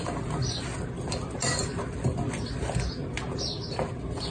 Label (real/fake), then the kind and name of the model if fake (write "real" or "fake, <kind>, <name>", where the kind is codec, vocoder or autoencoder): real